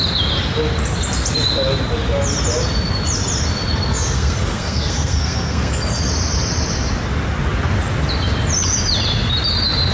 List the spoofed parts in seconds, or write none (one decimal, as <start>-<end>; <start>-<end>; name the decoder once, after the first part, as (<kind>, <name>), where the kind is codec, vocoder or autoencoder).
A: 3.9-5.7 (codec, SNAC)